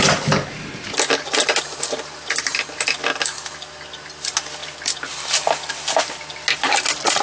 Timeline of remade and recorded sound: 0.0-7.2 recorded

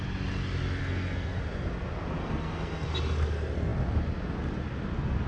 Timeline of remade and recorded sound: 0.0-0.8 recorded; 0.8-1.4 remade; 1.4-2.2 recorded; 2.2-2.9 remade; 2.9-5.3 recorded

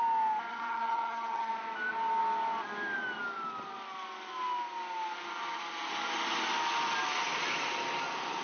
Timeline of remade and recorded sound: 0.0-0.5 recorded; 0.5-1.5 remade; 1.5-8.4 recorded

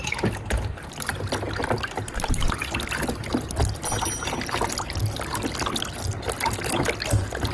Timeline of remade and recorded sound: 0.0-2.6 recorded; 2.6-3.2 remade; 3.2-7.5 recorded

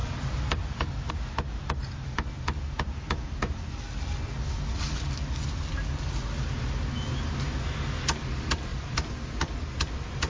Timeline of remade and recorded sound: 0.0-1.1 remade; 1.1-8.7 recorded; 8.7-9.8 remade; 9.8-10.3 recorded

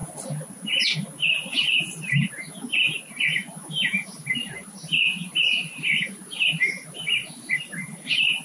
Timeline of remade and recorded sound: 0.0-3.7 recorded; 3.7-8.4 remade

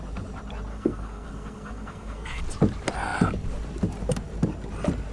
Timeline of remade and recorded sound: 0.0-0.7 recorded; 0.7-2.4 remade; 2.4-5.1 recorded

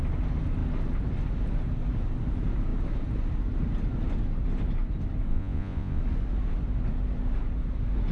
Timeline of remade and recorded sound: 0.0-5.3 recorded; 5.3-6.0 remade; 6.0-8.1 recorded